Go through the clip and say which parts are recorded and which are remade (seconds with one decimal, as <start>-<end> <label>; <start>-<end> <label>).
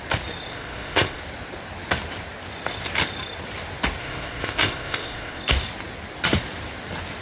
0.0-0.5 recorded; 0.5-1.2 remade; 1.2-4.0 recorded; 4.0-5.4 remade; 5.4-7.2 recorded